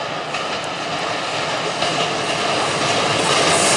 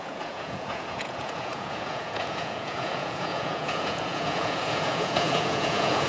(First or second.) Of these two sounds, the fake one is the second